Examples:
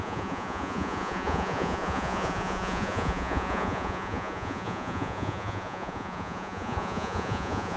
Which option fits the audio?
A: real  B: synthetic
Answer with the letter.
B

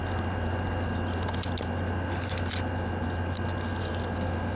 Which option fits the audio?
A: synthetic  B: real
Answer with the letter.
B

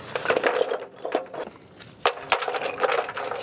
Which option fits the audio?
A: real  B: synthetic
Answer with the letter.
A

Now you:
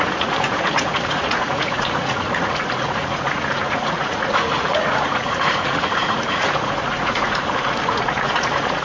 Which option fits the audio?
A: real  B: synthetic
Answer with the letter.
B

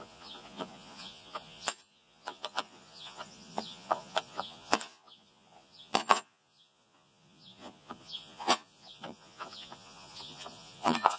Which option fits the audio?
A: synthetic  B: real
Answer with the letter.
A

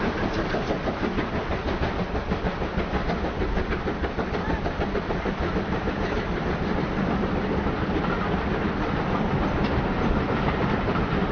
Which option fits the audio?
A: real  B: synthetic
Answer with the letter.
A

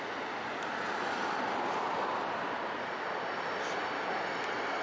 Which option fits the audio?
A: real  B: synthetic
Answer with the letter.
A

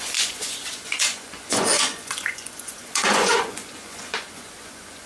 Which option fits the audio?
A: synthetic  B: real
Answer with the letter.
A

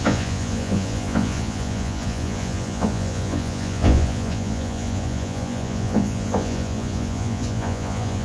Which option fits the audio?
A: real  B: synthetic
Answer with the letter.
B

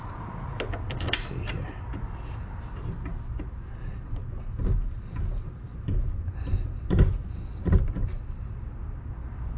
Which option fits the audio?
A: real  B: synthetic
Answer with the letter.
A